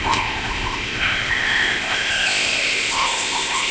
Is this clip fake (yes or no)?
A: yes